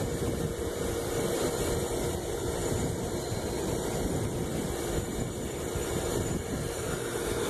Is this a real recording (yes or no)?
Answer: no